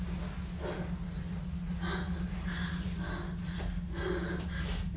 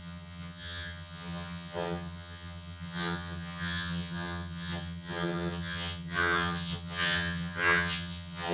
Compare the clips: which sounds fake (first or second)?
second